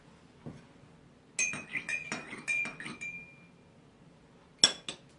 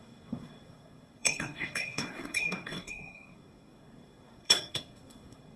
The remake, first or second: second